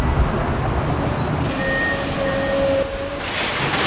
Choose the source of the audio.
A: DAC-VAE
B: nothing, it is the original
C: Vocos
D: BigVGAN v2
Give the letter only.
B